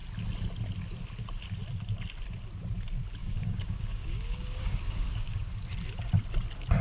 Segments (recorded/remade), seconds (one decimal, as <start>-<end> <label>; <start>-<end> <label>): 0.0-3.2 recorded; 3.2-5.5 remade; 5.5-6.8 recorded